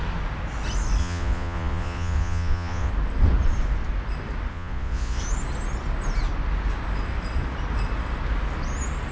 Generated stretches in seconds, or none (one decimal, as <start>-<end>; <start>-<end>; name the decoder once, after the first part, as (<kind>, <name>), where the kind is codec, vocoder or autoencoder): 1.0-2.9 (vocoder, Vocos); 4.5-5.2